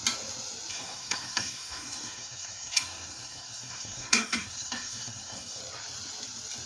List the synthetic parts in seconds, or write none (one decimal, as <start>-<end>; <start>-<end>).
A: 0.7-5.6